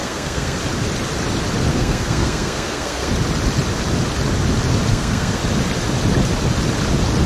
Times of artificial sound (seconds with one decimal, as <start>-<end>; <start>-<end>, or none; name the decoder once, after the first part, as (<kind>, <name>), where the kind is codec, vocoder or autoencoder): 0.0-0.6 (codec, SNAC); 1.7-3.1; 4.9-5.4

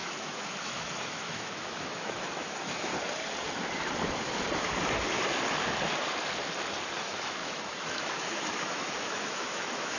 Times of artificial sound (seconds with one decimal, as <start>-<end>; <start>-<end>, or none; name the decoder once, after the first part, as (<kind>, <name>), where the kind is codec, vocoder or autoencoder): 0.0-2.9 (autoencoder, DAC-VAE); 7.0-10.0